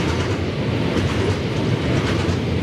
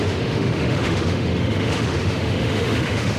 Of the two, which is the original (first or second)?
first